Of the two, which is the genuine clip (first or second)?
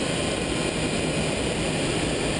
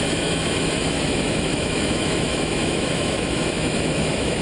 first